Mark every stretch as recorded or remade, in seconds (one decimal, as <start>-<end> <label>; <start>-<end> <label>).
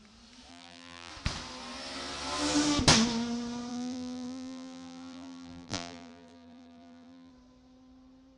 0.0-0.5 recorded; 0.5-1.1 remade; 1.1-3.7 recorded; 3.7-7.3 remade; 7.3-8.4 recorded